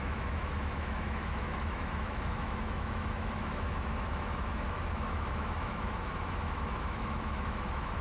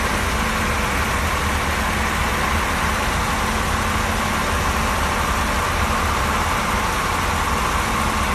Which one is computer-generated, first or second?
first